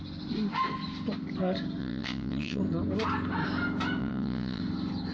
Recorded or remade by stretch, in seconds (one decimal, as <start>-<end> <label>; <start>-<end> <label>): 0.0-1.8 recorded; 1.8-2.6 remade; 2.6-4.0 recorded; 4.0-4.6 remade; 4.6-5.1 recorded